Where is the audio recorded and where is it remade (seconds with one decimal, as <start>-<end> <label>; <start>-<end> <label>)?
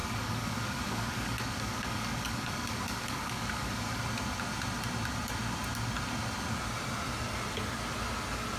0.0-4.0 remade; 4.0-8.6 recorded